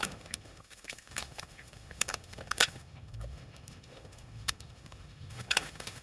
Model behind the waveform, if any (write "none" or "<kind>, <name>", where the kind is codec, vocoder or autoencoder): autoencoder, DAC-VAE